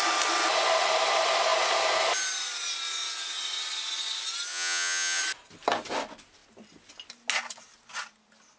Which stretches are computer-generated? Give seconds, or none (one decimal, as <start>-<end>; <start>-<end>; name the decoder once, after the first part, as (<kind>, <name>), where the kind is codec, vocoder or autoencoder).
4.5-5.2 (vocoder, Vocos)